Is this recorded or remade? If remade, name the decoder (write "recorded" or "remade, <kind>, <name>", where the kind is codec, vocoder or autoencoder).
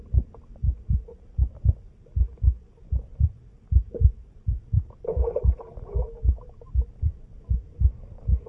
recorded